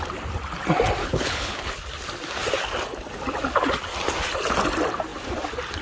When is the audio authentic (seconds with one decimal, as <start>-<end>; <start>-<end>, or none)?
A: 0.0-1.0; 1.7-5.8